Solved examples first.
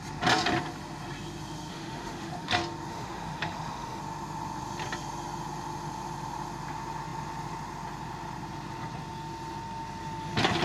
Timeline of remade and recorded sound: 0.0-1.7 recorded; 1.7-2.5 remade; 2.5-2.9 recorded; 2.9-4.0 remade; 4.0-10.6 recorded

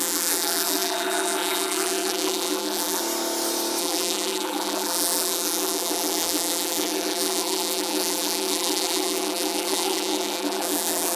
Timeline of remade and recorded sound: 0.0-3.0 remade; 3.0-3.8 recorded; 3.8-11.2 remade

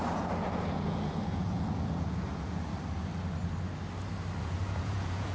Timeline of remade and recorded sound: 0.0-2.7 remade; 2.7-4.4 recorded; 4.4-5.3 remade

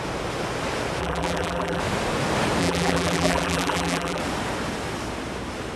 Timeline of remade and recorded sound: 0.0-1.0 recorded; 1.0-1.8 remade; 1.8-2.6 recorded; 2.6-4.2 remade; 4.2-5.8 recorded